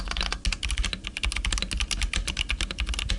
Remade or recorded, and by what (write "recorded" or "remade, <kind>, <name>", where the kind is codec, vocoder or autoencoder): recorded